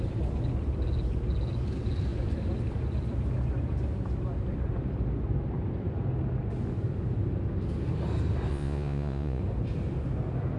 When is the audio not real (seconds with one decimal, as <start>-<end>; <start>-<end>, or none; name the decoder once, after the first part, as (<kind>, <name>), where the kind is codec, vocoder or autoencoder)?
8.5-9.4 (vocoder, Vocos)